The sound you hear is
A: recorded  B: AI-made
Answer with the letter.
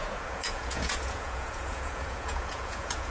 B